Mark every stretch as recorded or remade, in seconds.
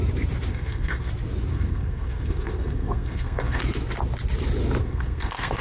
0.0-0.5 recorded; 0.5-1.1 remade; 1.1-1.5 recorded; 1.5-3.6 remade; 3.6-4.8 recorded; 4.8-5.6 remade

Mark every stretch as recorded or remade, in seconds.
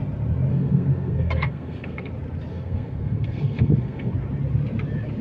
0.0-0.5 recorded; 0.5-2.1 remade; 2.1-2.5 recorded; 2.5-4.1 remade; 4.1-5.2 recorded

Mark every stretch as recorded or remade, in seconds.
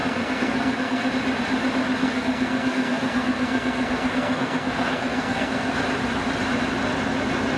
0.0-1.1 remade; 1.1-2.0 recorded; 2.0-5.7 remade; 5.7-7.6 recorded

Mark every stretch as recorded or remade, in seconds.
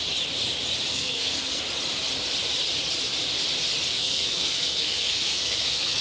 0.0-0.9 recorded; 0.9-1.6 remade; 1.6-3.9 recorded; 3.9-6.0 remade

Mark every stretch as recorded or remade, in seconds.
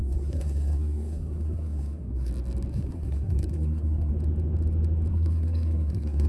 0.0-2.3 remade; 2.3-2.7 recorded; 2.7-4.1 remade; 4.1-5.1 recorded; 5.1-6.3 remade